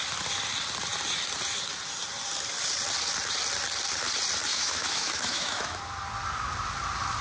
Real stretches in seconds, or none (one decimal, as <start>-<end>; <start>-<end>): 0.0-4.5; 5.8-7.2

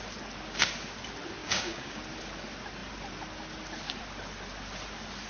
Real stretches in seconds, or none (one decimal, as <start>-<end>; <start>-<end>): 0.0-1.4; 2.0-5.3